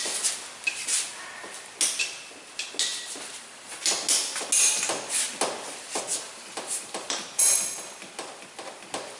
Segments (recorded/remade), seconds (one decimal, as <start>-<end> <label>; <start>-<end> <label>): 0.0-6.1 recorded; 6.1-7.5 remade; 7.5-9.2 recorded